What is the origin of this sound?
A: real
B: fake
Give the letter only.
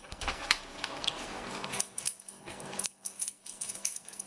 B